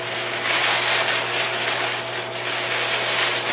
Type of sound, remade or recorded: recorded